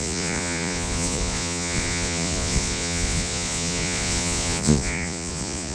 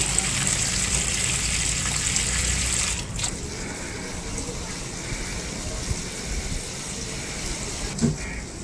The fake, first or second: first